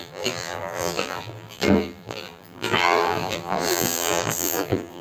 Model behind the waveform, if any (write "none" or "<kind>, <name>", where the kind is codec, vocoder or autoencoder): vocoder, BigVGAN v2